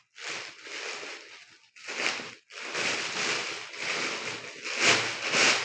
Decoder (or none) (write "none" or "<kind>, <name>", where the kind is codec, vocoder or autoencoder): none